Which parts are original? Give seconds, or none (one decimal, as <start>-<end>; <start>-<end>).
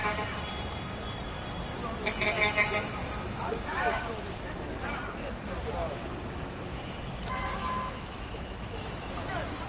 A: 0.0-1.8; 4.7-6.0; 9.1-9.7